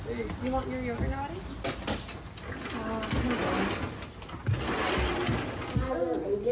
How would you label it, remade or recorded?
recorded